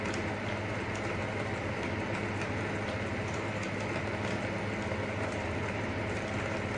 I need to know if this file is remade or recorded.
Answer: recorded